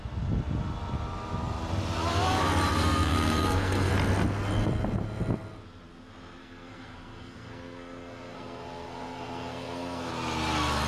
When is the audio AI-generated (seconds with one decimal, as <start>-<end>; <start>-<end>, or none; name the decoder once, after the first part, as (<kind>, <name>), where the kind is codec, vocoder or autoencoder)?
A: 2.7-3.9 (codec, SNAC); 6.4-10.1